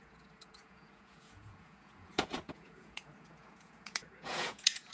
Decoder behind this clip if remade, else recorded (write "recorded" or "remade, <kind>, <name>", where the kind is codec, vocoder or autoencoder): remade, vocoder, Vocos